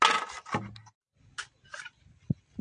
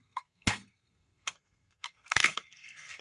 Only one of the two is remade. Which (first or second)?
second